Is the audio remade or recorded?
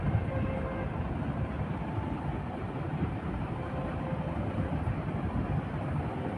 remade